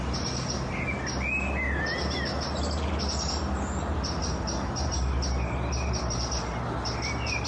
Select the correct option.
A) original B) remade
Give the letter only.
A